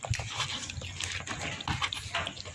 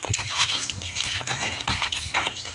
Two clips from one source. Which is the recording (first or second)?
first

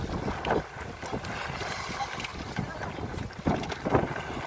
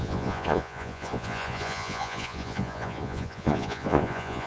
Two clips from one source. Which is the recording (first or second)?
first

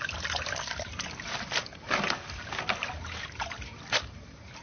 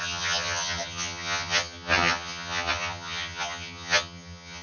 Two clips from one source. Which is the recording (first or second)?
first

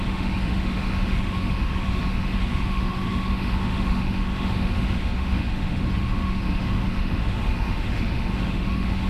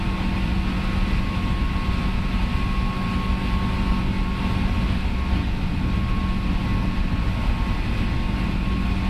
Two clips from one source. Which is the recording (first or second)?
second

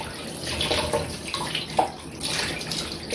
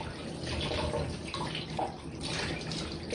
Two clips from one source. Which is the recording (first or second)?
first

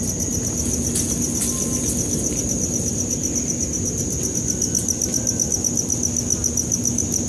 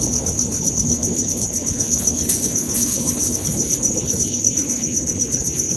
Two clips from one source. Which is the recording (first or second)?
first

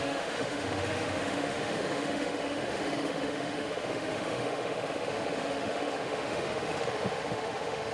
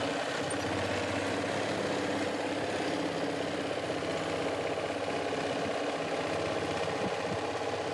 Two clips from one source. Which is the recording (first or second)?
second